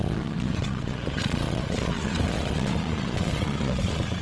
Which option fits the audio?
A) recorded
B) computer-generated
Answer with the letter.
B